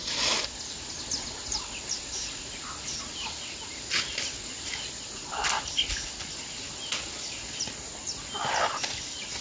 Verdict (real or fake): real